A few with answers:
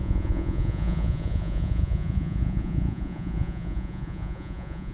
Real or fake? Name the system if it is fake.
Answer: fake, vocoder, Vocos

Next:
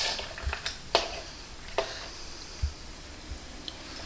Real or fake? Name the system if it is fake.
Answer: real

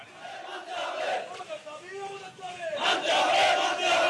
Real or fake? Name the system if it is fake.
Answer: real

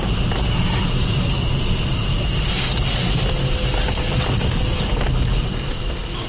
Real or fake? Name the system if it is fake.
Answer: real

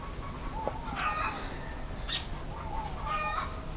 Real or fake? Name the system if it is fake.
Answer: real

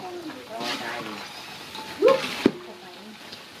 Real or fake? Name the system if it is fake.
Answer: real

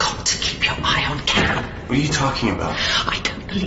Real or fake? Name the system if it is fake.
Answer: real